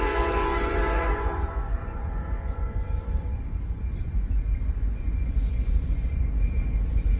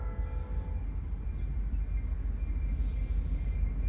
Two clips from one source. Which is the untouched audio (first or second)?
second